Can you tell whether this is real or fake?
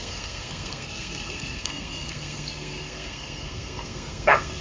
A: fake